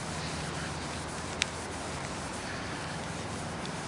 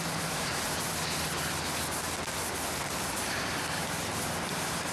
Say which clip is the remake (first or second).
first